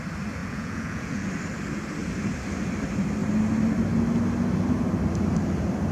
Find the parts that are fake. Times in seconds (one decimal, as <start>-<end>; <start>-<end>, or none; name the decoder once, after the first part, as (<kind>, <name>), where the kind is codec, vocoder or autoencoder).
0.4-1.3 (vocoder, Vocos)